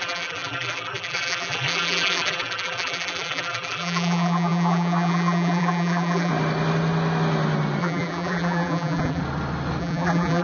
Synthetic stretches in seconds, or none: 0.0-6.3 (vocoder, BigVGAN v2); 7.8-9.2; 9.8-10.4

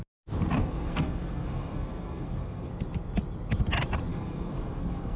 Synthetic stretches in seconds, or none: 0.6-2.7 (codec, SNAC); 4.1-5.2

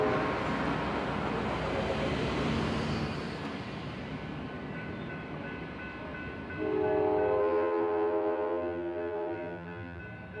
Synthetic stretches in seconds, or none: 7.4-10.0 (vocoder, BigVGAN v2)

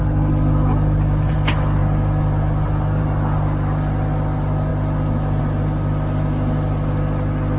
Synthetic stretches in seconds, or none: none

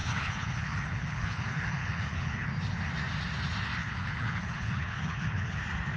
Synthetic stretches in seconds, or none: 0.0-2.5 (codec, HILCodec); 3.8-5.6

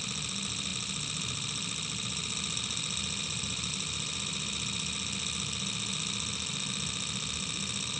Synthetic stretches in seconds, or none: none

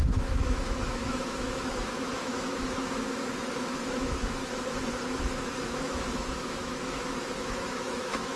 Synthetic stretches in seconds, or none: 0.0-4.4 (autoencoder, DAC-VAE); 5.1-8.4